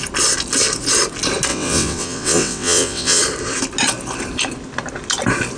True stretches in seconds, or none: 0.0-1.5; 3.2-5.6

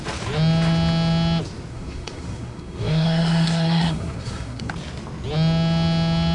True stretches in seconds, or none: 0.0-1.7; 4.7-6.3

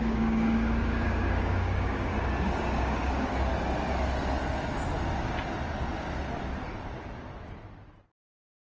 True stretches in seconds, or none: 2.1-2.6; 3.5-8.2

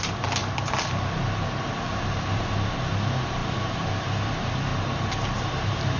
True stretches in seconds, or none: 0.4-1.9; 4.7-5.4

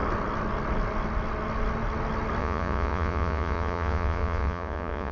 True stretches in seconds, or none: 0.0-2.4

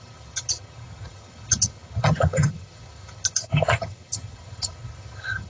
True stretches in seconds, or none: none

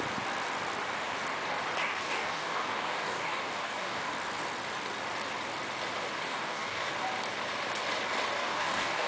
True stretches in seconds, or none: 0.0-1.8; 4.0-6.3; 6.9-8.4